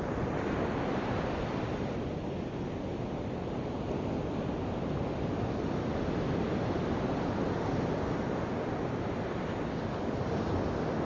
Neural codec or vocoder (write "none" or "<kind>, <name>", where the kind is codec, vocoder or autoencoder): none